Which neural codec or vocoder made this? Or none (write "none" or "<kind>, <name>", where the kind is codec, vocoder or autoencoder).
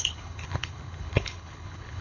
codec, HILCodec